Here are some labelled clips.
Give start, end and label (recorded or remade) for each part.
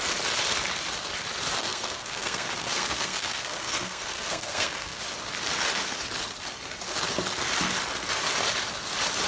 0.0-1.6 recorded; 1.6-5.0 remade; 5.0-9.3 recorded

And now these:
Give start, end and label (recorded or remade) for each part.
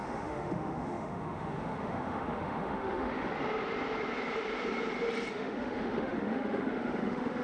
0.0-3.3 remade; 3.3-5.3 recorded; 5.3-7.4 remade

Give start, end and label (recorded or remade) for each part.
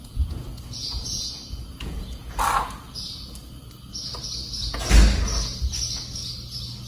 0.0-2.3 remade; 2.3-6.9 recorded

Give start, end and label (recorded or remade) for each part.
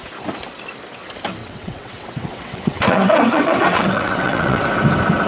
0.0-1.4 recorded; 1.4-4.6 remade; 4.6-5.3 recorded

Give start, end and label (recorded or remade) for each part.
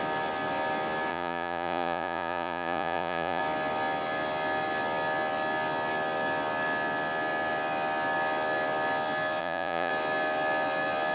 0.0-1.1 recorded; 1.1-3.4 remade; 3.4-9.4 recorded; 9.4-9.9 remade; 9.9-11.1 recorded